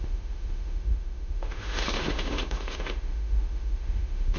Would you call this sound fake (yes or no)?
yes